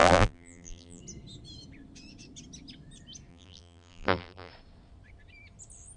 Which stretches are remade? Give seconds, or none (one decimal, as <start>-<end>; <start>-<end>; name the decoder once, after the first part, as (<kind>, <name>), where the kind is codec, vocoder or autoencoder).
0.0-1.0 (vocoder, BigVGAN v2); 3.3-4.5